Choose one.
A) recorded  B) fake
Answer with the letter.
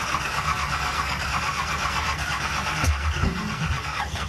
B